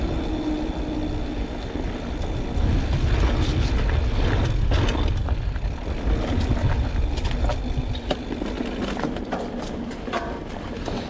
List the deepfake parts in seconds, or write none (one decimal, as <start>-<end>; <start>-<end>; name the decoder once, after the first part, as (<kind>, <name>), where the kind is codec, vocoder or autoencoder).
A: none